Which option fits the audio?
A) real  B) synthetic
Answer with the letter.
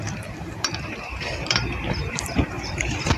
B